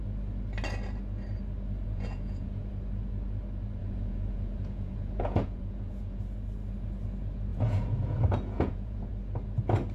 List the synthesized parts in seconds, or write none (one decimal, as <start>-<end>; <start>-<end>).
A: 1.8-2.7; 3.8-6.2; 7.5-9.1